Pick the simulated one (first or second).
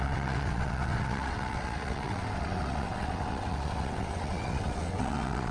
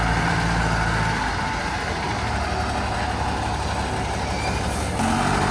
first